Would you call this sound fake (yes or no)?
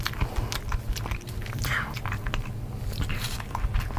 no